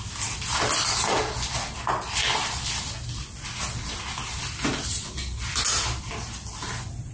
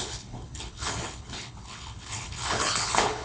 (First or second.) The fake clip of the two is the second